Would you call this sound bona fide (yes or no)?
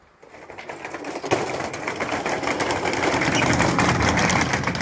no